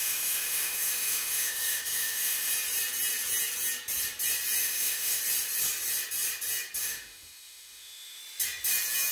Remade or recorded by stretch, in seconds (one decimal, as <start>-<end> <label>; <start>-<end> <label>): 0.0-2.5 remade; 2.5-4.6 recorded; 4.6-5.2 remade; 5.2-6.8 recorded; 6.8-8.2 remade; 8.2-9.1 recorded

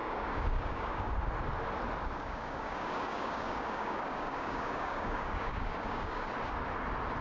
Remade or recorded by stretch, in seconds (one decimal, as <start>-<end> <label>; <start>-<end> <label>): 0.0-1.1 remade; 1.1-2.0 recorded; 2.0-6.3 remade; 6.3-7.2 recorded

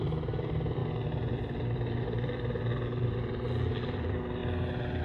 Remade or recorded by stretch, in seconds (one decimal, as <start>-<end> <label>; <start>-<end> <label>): 0.0-0.8 remade; 0.8-3.8 recorded; 3.8-4.4 remade; 4.4-5.0 recorded